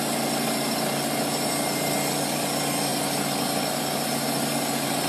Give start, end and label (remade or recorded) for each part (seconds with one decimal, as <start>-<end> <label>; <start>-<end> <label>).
0.0-5.1 recorded